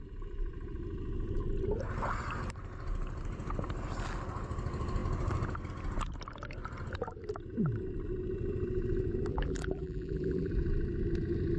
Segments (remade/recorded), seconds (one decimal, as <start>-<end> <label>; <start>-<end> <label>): 0.0-9.3 recorded; 9.3-10.5 remade; 10.5-11.6 recorded